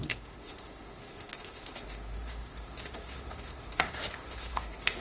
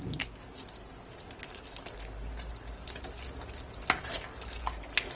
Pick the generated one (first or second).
first